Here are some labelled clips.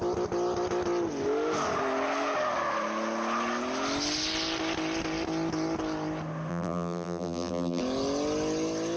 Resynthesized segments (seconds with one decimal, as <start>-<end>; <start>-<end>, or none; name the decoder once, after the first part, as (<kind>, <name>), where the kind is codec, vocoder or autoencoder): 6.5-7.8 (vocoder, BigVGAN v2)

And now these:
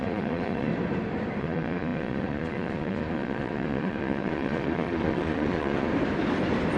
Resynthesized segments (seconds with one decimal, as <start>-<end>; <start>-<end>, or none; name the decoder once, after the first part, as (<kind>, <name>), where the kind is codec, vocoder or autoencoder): 0.0-0.7 (vocoder, Vocos); 1.4-5.9

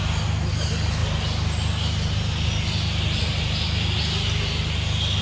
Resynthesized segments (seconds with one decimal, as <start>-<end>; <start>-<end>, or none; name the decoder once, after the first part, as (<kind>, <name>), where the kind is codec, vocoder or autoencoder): none

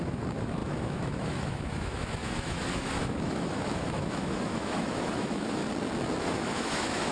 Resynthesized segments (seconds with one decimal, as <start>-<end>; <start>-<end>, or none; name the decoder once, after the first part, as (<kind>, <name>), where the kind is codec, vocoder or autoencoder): 0.0-5.6 (autoencoder, DAC-VAE); 6.2-7.1